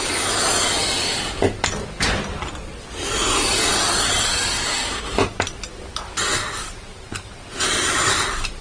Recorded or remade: recorded